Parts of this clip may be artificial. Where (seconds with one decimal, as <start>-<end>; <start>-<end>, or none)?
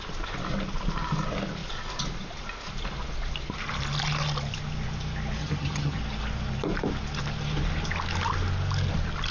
5.4-6.0